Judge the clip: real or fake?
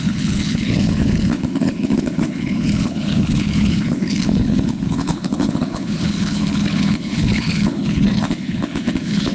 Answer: fake